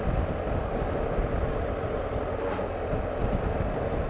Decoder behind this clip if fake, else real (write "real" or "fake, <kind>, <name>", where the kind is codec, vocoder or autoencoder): real